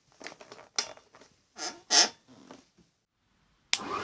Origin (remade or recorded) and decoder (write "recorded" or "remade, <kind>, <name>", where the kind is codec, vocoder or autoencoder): recorded